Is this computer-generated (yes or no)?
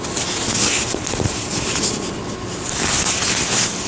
no